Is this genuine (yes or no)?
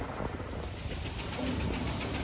yes